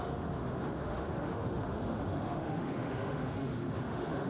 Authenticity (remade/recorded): remade